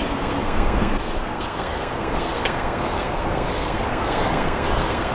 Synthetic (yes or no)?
yes